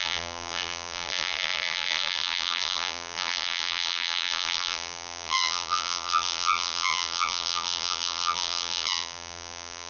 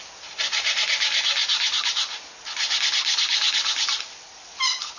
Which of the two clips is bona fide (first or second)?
second